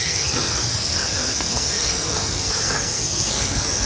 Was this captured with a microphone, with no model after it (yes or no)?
no